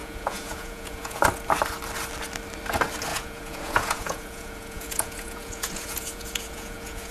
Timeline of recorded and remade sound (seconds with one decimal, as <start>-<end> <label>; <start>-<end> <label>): 0.0-1.2 remade; 1.2-3.1 recorded; 3.1-7.1 remade